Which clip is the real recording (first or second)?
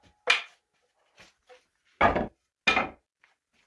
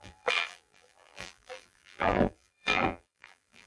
first